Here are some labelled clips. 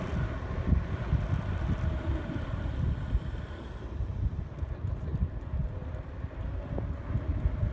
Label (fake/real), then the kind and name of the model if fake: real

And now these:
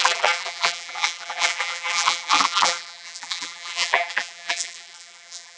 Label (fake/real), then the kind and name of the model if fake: fake, vocoder, BigVGAN v2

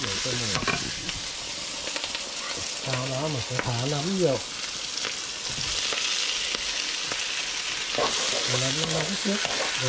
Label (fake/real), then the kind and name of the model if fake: real